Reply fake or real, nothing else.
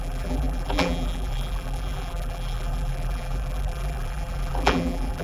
fake